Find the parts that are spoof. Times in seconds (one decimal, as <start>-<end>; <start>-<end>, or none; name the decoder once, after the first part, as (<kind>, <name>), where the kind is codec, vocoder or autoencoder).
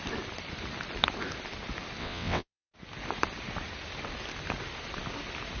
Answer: 2.0-2.7 (vocoder, WaveNeXt)